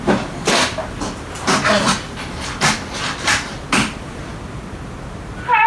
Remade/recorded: recorded